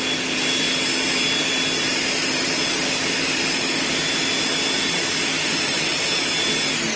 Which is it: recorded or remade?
recorded